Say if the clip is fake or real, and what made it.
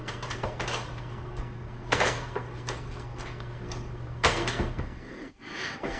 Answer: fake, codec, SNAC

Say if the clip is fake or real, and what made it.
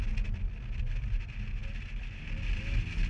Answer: real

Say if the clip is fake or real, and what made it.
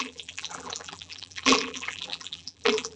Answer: fake, vocoder, BigVGAN v2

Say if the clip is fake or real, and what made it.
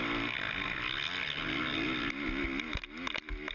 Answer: real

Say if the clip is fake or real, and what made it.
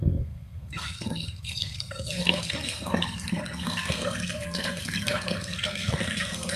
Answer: fake, codec, SNAC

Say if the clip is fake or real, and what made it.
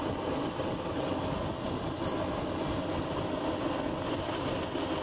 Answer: real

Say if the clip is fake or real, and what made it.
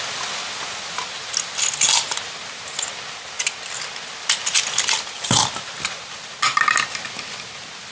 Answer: real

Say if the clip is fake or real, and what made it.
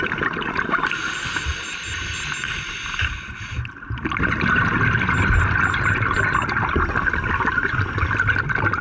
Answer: real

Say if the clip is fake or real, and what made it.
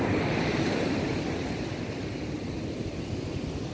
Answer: real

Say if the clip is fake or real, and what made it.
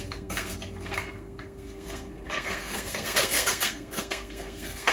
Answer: fake, codec, SNAC